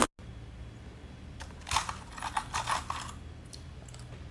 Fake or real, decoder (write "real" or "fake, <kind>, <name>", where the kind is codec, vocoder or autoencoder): real